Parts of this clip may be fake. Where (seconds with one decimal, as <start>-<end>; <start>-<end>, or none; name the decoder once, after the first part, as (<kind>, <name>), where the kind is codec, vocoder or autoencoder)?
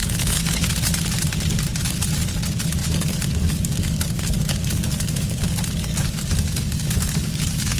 0.0-0.7 (codec, DAC); 2.8-7.8